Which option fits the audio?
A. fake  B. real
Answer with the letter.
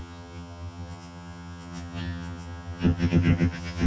A